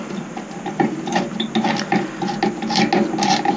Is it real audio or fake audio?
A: real